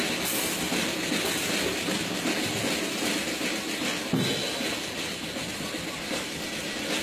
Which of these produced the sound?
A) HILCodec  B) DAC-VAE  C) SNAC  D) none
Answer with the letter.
D